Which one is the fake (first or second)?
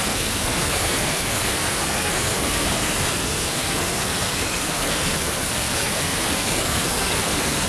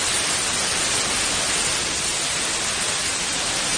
first